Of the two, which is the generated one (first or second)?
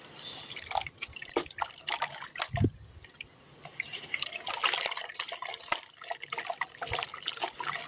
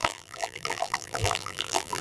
second